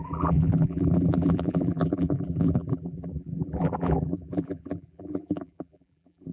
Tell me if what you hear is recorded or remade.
remade